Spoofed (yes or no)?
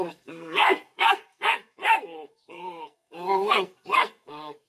yes